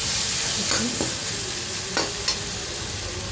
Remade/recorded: recorded